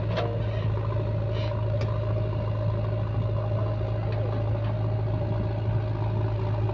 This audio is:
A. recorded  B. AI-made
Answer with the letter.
A